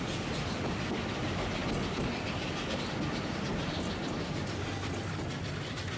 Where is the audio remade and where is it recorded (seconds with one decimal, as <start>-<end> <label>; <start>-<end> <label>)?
0.0-6.0 recorded